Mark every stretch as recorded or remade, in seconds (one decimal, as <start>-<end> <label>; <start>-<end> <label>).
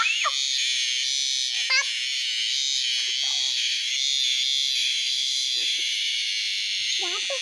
0.0-3.4 recorded; 3.4-3.9 remade; 3.9-4.8 recorded; 4.8-6.3 remade; 6.3-7.4 recorded